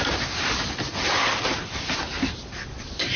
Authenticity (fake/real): real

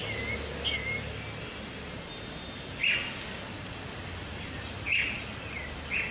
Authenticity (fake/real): real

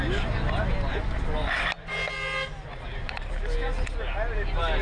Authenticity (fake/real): real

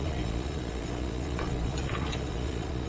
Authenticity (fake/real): fake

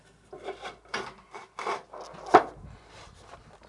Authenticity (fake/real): real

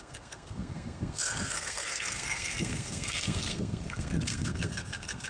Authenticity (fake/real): fake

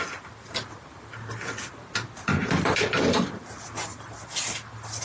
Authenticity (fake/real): real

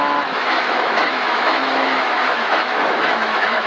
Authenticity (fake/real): fake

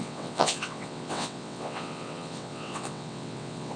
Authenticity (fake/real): fake